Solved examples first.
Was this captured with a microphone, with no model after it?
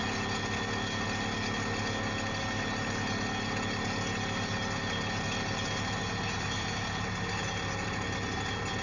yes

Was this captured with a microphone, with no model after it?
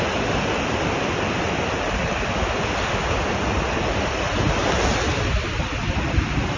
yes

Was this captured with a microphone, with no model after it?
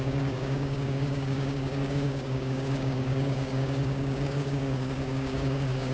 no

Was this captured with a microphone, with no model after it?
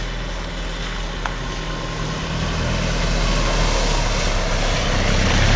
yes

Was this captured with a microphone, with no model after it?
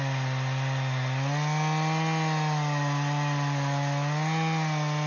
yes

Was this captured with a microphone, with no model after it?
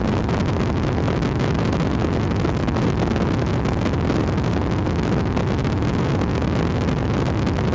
yes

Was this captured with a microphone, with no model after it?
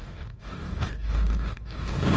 no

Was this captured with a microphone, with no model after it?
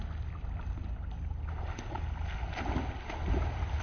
yes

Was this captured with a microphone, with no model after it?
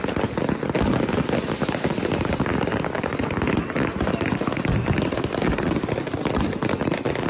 yes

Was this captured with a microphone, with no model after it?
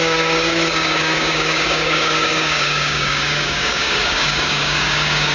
no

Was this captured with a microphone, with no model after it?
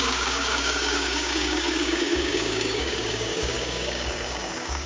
no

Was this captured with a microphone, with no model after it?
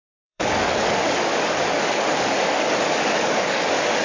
no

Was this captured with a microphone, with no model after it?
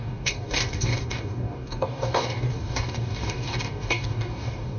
no